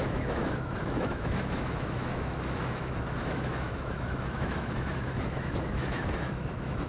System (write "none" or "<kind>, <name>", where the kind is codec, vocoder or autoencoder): autoencoder, DAC-VAE